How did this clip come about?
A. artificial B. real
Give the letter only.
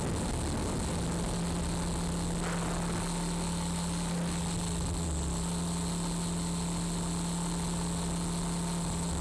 B